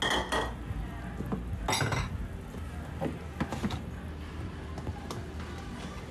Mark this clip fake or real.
real